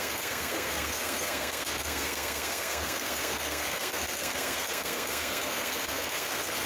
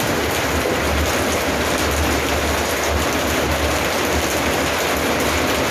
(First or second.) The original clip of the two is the second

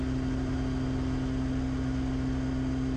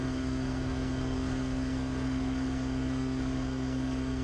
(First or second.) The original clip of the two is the first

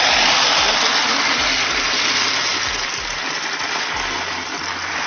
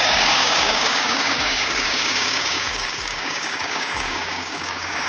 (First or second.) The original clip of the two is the first